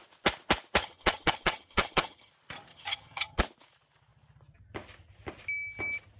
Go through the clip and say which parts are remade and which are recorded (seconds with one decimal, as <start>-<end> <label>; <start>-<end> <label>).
0.0-0.8 recorded; 0.8-2.3 remade; 2.3-2.7 recorded; 2.7-3.4 remade; 3.4-6.2 recorded